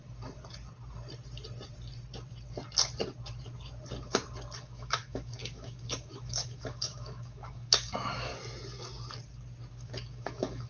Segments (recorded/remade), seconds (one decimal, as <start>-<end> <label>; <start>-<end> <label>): 0.0-4.6 recorded; 4.6-8.3 remade; 8.3-9.7 recorded; 9.7-10.7 remade